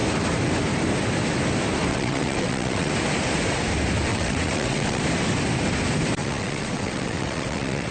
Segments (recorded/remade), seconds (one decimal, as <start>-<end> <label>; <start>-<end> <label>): 0.0-1.9 recorded; 1.9-2.9 remade; 2.9-4.1 recorded; 4.1-5.0 remade; 5.0-6.2 recorded; 6.2-7.9 remade